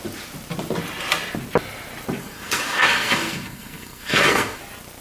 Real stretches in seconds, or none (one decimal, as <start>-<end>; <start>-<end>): 0.0-2.2; 4.6-5.0